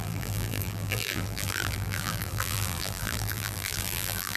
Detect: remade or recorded remade